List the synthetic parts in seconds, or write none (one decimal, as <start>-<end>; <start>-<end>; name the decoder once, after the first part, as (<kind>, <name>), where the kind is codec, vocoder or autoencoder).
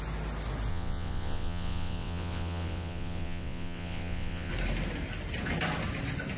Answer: 0.7-4.5 (vocoder, WaveNeXt)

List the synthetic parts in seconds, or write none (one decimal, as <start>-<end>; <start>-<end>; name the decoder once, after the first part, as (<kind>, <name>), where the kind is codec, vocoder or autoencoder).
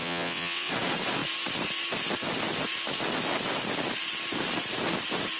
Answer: 0.0-0.7 (vocoder, WaveNeXt)